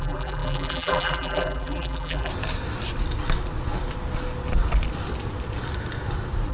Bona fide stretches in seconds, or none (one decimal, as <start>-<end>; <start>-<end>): 2.3-6.5